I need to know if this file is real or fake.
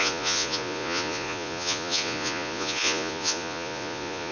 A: fake